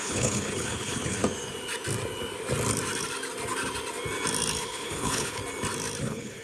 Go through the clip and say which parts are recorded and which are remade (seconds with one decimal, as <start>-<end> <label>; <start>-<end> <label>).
0.0-1.2 remade; 1.2-4.6 recorded; 4.6-5.4 remade; 5.4-6.0 recorded; 6.0-6.4 remade